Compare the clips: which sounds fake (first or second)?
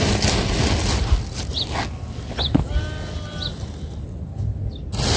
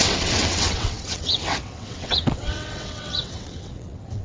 second